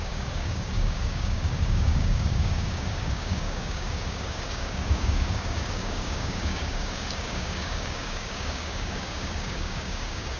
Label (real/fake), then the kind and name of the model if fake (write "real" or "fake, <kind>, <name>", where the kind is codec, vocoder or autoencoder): fake, codec, DAC